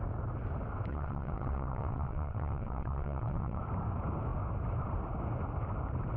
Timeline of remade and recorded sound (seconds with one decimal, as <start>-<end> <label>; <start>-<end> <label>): 0.0-0.9 recorded; 0.9-3.6 remade; 3.6-6.2 recorded